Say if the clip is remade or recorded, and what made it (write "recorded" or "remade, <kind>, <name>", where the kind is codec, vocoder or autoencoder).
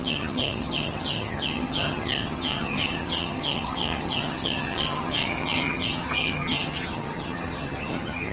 remade, vocoder, HiFi-GAN